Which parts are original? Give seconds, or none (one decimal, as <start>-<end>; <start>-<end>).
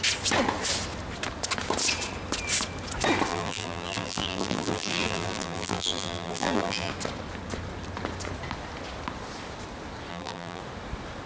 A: 0.0-3.3; 6.9-10.1; 10.6-11.3